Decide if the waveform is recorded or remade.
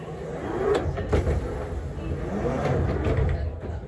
recorded